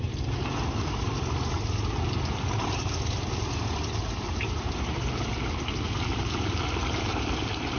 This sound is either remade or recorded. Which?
recorded